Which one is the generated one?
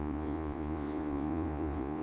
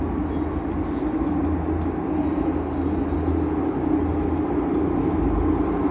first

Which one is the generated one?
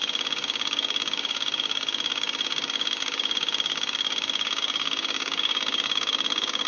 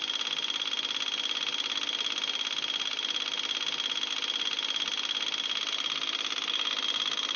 first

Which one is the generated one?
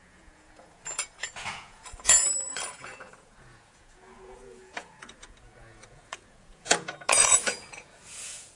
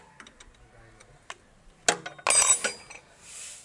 first